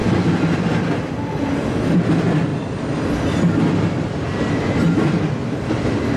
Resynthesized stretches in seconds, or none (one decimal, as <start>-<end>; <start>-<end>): none